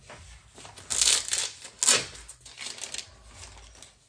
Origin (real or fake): real